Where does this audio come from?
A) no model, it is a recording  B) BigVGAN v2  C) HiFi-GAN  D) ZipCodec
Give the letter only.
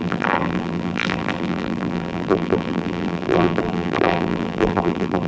B